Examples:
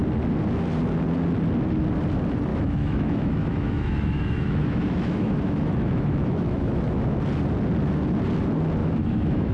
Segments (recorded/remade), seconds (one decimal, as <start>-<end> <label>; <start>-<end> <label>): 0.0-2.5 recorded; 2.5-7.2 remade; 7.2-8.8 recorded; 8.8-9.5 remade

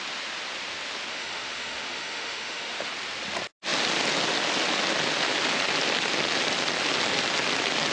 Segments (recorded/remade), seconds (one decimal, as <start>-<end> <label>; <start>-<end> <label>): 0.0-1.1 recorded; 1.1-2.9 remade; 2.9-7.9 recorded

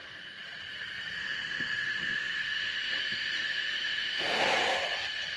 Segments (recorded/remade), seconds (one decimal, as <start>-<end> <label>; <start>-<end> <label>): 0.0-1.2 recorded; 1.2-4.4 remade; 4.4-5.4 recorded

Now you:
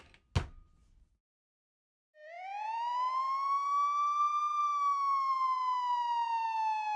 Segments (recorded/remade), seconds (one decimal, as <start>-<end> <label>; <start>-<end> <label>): 0.0-7.0 recorded

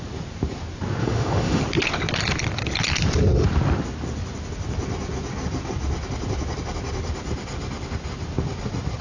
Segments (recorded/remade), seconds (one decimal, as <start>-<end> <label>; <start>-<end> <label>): 0.0-1.0 recorded; 1.0-1.6 remade; 1.6-9.0 recorded